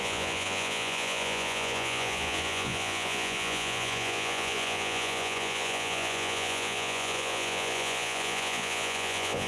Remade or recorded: remade